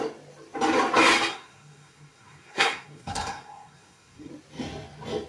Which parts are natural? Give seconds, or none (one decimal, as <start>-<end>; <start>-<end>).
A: 0.0-1.3; 4.3-5.3